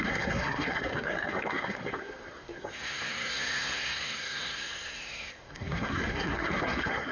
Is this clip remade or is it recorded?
remade